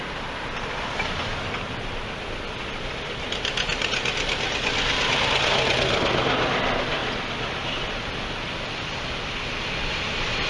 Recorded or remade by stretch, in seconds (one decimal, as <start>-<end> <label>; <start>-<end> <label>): 0.0-10.5 recorded